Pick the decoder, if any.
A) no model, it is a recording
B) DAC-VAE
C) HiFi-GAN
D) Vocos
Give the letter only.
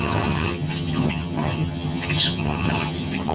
C